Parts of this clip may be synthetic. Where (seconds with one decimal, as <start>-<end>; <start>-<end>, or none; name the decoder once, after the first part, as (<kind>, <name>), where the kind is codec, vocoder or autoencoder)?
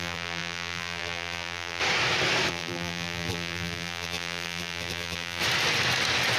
0.0-1.8 (vocoder, BigVGAN v2); 2.5-5.4